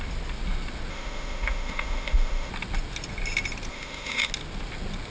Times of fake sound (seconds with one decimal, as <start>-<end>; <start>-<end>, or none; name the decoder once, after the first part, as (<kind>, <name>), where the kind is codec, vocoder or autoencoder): 0.9-2.5 (autoencoder, DAC-VAE); 3.7-4.3